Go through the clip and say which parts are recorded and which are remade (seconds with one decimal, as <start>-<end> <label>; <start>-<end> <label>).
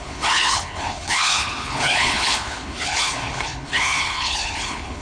0.0-5.0 remade